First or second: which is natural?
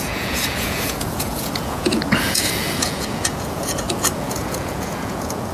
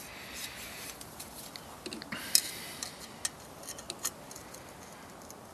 second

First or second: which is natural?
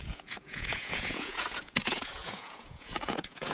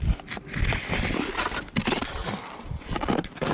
second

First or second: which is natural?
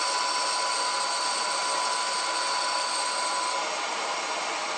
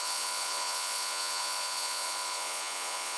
first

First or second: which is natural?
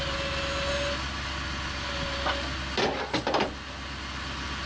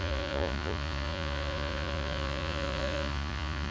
first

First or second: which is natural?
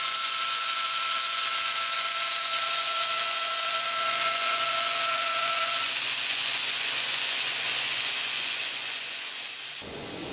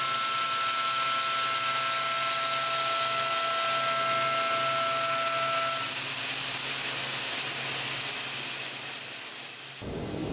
second